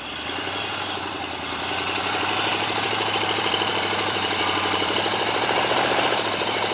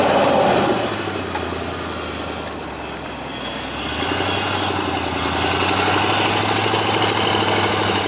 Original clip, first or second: second